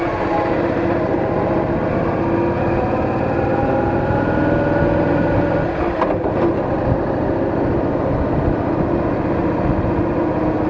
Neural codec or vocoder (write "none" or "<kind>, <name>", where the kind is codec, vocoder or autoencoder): none